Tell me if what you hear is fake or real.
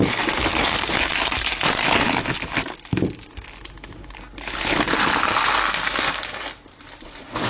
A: real